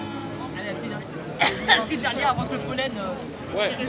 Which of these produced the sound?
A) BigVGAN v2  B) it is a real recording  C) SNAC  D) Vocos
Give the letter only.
B